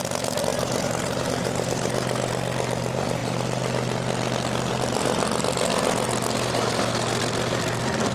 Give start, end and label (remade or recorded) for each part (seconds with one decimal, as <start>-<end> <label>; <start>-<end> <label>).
0.0-0.5 recorded; 0.5-2.3 remade; 2.3-8.1 recorded

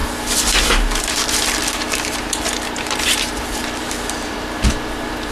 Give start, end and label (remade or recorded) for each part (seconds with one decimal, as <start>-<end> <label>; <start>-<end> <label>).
0.0-3.2 remade; 3.2-3.6 recorded; 3.6-4.7 remade; 4.7-5.3 recorded